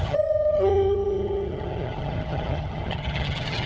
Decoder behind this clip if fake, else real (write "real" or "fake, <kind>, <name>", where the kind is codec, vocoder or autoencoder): fake, vocoder, HiFi-GAN